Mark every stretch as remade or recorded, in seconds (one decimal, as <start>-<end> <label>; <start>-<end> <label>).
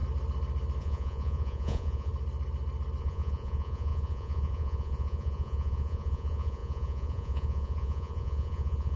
0.0-0.8 recorded; 0.8-2.1 remade; 2.1-3.0 recorded; 3.0-9.0 remade